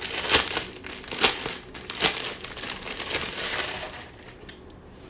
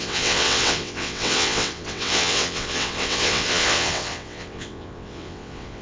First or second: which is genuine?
first